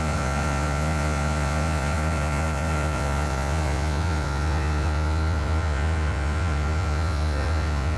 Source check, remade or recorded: remade